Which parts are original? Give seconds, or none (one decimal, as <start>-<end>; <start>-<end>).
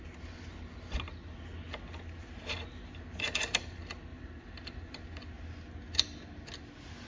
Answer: 0.0-4.1; 5.0-7.1